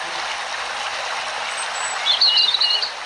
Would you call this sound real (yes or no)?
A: yes